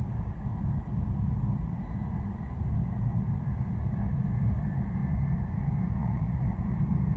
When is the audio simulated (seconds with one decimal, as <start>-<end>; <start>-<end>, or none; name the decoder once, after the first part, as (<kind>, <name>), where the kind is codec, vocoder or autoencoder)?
6.0-6.8 (vocoder, Vocos)